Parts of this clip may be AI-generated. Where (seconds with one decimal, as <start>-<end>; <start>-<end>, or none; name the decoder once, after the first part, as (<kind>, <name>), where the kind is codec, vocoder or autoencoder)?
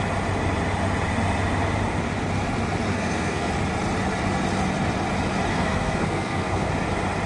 2.9-3.5 (codec, SNAC); 5.5-6.7